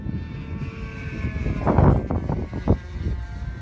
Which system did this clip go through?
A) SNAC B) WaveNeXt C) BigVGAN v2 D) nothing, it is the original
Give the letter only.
D